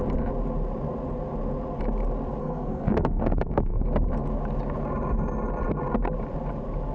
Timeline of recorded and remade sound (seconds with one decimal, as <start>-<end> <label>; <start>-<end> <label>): 0.0-2.4 recorded; 2.4-3.8 remade; 3.8-6.9 recorded